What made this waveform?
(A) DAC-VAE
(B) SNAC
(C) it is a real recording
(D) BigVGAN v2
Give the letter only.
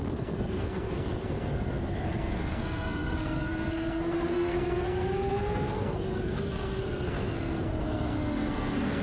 B